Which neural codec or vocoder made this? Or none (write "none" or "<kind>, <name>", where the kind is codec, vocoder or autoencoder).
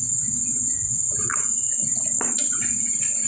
vocoder, Vocos